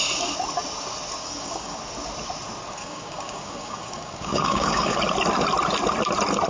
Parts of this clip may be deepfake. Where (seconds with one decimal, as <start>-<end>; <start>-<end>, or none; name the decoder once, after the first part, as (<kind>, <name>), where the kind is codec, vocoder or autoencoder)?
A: 1.2-1.8 (codec, DAC); 2.8-5.0